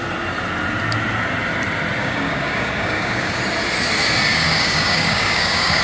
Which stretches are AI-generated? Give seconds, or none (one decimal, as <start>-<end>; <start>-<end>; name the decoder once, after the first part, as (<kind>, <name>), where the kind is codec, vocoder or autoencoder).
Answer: 2.0-3.4 (codec, DAC); 4.3-5.8